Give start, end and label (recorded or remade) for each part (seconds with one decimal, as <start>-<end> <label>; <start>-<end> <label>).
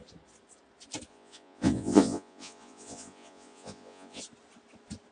0.0-1.1 recorded; 1.1-4.2 remade; 4.2-5.1 recorded